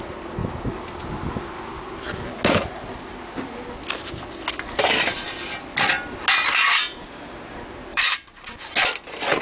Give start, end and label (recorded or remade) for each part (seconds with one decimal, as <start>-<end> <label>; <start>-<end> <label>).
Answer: 0.0-7.9 recorded; 7.9-8.7 remade; 8.7-9.4 recorded